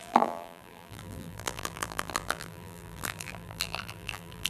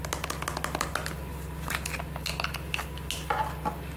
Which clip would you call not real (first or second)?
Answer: first